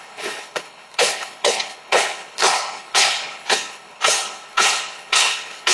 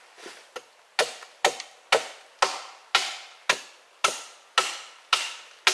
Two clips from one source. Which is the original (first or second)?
second